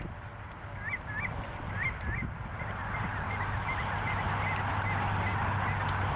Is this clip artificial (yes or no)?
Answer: no